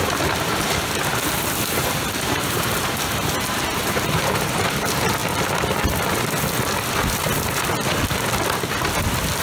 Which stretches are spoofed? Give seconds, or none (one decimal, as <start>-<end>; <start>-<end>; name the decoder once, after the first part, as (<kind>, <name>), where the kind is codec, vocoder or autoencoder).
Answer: 0.0-1.1 (vocoder, BigVGAN v2); 1.7-5.2